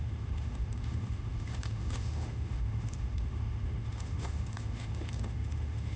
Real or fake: fake